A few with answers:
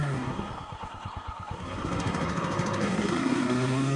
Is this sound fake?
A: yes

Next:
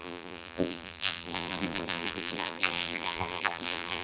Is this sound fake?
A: yes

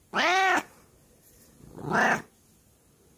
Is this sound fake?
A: no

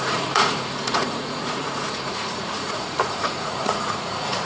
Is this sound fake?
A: yes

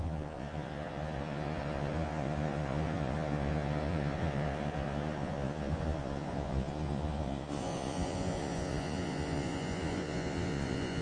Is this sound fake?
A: yes